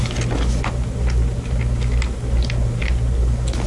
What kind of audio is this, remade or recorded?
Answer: recorded